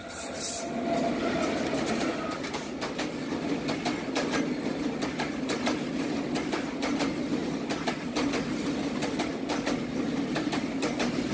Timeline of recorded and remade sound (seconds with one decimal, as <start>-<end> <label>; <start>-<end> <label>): 0.0-11.3 recorded